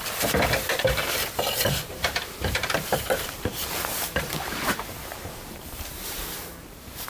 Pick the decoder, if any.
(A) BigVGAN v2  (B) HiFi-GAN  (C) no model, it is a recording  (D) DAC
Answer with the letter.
A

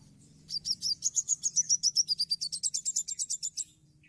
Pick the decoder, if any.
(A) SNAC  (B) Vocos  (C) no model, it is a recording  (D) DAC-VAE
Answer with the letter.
C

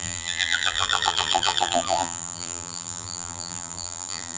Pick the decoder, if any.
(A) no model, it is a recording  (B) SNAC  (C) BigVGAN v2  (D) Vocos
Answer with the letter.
C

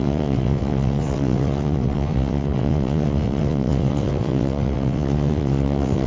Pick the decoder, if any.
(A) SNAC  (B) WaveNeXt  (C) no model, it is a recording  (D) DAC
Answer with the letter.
B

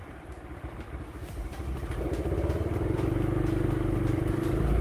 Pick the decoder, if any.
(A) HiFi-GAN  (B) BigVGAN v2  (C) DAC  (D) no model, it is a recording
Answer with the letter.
D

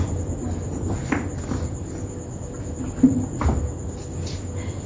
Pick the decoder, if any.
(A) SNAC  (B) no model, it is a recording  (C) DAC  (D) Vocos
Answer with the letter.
B